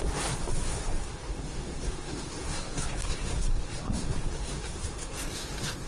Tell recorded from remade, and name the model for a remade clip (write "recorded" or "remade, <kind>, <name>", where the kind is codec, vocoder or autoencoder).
remade, codec, SNAC